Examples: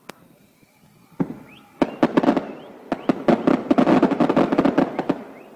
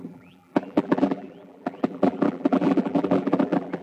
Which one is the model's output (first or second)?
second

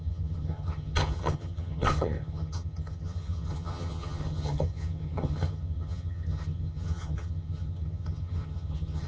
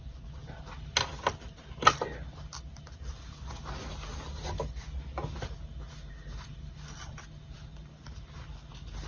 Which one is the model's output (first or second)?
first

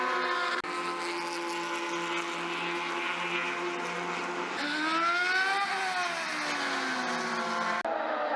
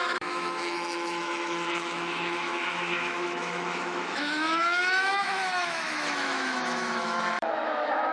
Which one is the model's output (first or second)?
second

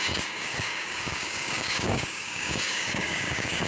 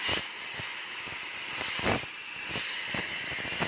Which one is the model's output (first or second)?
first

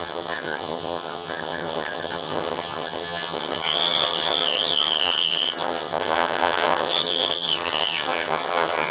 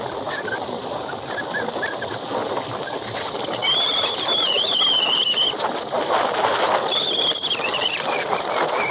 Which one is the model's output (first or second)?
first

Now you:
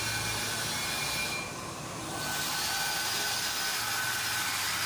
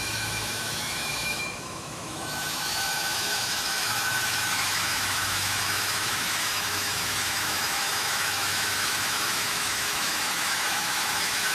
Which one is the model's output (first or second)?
second